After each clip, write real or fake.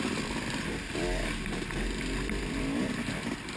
real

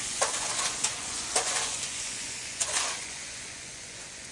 fake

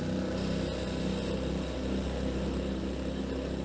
real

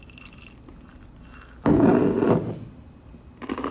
real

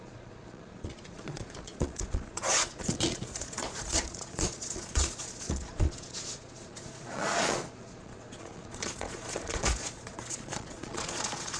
fake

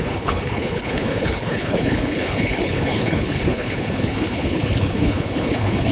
fake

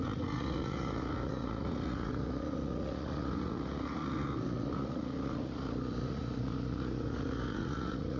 fake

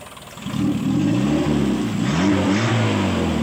real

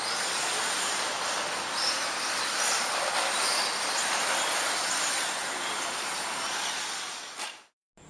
real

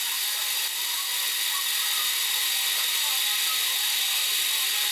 real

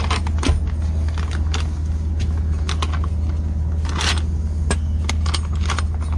real